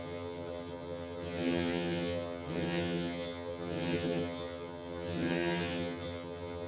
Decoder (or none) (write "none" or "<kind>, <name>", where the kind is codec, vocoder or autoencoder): vocoder, HiFi-GAN